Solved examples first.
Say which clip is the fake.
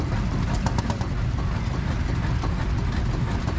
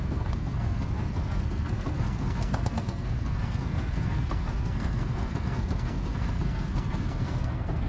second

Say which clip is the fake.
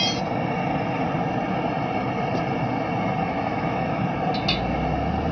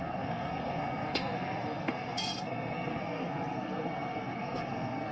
second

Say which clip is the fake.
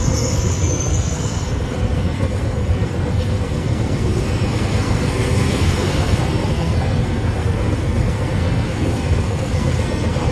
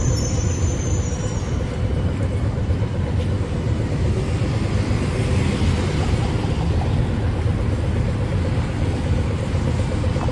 first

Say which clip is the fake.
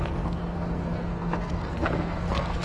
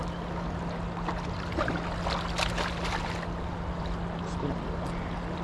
first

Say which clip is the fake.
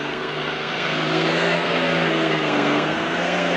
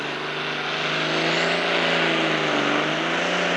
first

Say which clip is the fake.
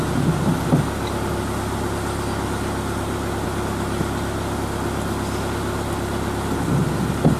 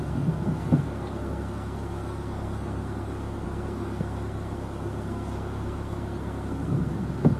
second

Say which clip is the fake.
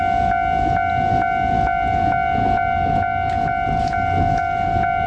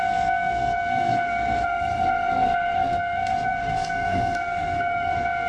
second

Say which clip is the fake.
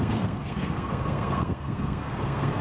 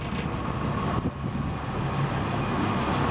first